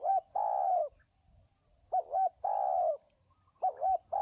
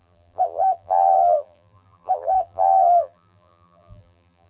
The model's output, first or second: second